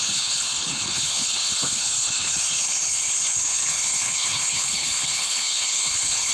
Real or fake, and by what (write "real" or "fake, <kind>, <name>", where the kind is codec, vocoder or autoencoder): fake, codec, HILCodec